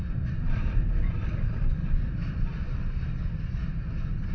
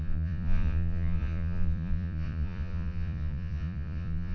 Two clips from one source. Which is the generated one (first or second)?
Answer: second